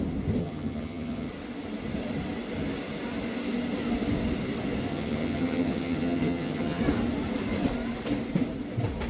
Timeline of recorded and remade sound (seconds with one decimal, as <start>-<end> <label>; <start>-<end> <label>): 0.0-0.4 recorded; 0.4-1.3 remade; 1.3-4.9 recorded; 4.9-6.8 remade; 6.8-9.1 recorded

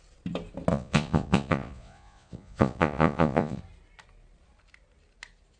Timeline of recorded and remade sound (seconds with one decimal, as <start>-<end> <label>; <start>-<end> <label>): 0.0-0.7 recorded; 0.7-3.6 remade; 3.6-5.6 recorded

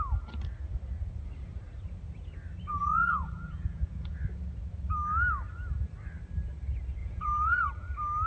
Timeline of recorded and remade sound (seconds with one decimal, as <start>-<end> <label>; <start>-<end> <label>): 0.0-3.0 recorded; 3.0-4.2 remade; 4.2-7.0 recorded; 7.0-7.7 remade; 7.7-8.3 recorded

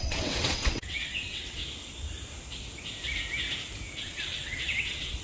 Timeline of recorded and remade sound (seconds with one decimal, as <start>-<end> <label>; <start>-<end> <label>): 0.0-1.6 remade; 1.6-4.0 recorded; 4.0-5.2 remade

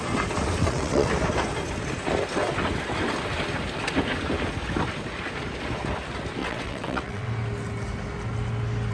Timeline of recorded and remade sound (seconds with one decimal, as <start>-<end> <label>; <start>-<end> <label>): 0.0-0.6 recorded; 0.6-1.1 remade; 1.1-6.4 recorded; 6.4-7.3 remade; 7.3-8.9 recorded

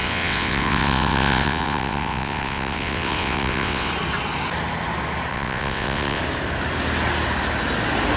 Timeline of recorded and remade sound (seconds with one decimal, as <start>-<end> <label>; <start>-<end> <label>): 0.0-3.9 remade; 3.9-5.3 recorded; 5.3-6.2 remade; 6.2-8.2 recorded

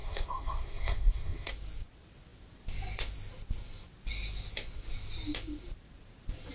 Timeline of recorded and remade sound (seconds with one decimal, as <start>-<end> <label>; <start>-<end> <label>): 0.0-1.5 remade; 1.5-6.5 recorded

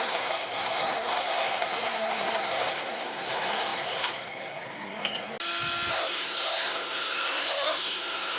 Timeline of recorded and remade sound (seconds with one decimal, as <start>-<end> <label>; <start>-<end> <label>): 0.0-5.3 remade; 5.3-5.9 recorded; 5.9-8.4 remade